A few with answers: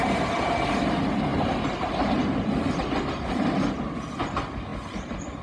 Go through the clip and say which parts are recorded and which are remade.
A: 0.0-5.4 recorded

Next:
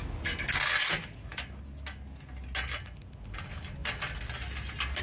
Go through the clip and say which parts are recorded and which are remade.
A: 0.0-5.0 recorded

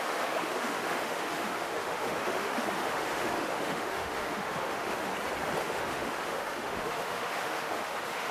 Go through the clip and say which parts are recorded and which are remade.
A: 0.0-5.1 remade; 5.1-5.6 recorded; 5.6-8.3 remade

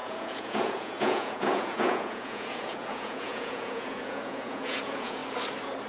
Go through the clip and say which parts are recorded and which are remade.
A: 0.0-5.2 remade; 5.2-5.9 recorded

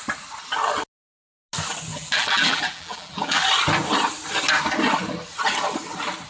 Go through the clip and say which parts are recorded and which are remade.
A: 0.0-1.9 recorded; 1.9-3.4 remade; 3.4-6.3 recorded

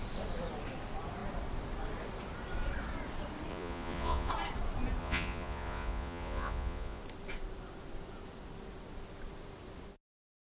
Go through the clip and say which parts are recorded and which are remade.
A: 0.0-3.5 recorded; 3.5-4.3 remade; 4.3-5.0 recorded; 5.0-7.0 remade; 7.0-10.5 recorded